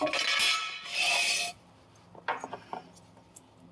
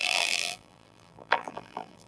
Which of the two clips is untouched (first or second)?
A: first